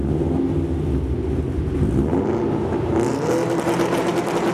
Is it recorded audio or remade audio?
recorded